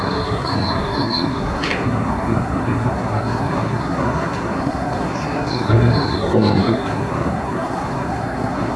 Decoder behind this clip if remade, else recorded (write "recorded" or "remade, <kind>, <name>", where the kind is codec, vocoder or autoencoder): remade, codec, SNAC